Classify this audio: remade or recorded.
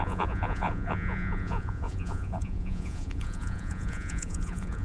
remade